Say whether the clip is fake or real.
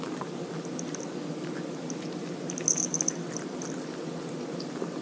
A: real